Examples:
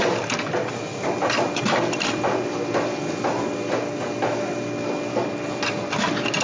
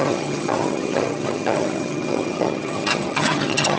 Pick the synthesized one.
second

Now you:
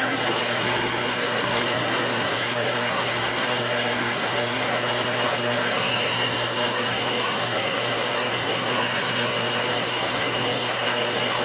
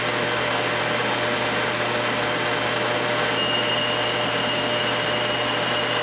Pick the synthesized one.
first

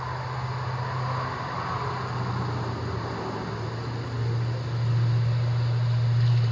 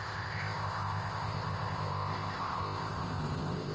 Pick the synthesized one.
second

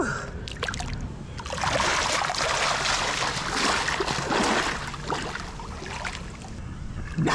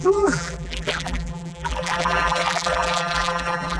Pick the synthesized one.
second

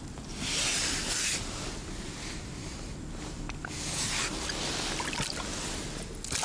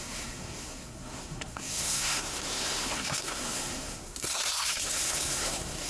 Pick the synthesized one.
second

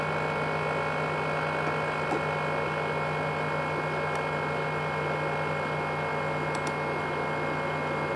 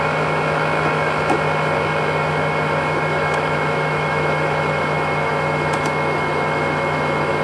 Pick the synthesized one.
second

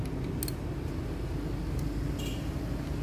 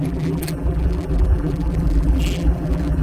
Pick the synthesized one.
second